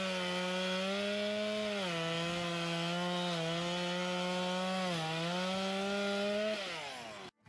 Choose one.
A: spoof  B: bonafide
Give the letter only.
B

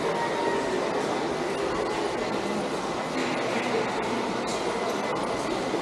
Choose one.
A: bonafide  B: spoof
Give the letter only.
A